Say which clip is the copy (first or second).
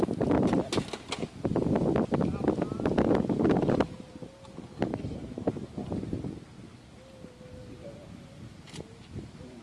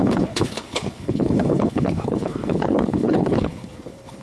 second